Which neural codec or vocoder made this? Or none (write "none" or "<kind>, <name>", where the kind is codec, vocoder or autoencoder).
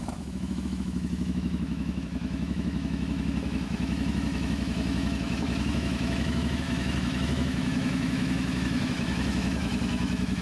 autoencoder, DAC-VAE